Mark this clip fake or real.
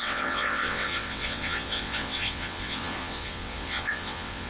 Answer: fake